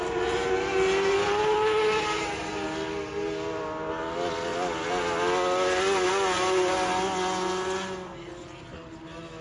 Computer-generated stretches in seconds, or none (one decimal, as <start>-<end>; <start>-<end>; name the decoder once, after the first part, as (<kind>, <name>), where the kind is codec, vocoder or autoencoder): none